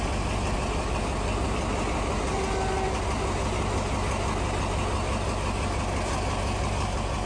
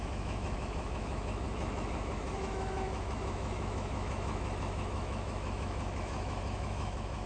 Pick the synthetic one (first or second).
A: second